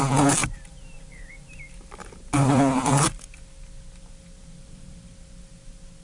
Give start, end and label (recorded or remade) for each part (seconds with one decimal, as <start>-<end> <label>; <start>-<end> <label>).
0.0-0.4 recorded; 0.4-2.8 remade; 2.8-6.0 recorded